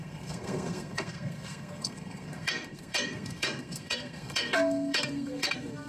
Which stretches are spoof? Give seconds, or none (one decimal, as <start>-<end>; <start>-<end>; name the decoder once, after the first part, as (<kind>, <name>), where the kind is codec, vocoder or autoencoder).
0.0-5.9 (codec, SNAC)